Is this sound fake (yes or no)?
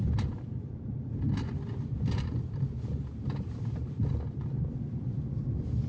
no